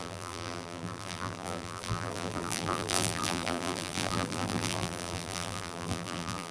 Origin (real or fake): fake